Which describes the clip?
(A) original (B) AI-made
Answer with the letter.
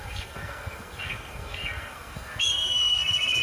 B